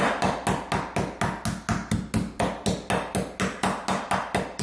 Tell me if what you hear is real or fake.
real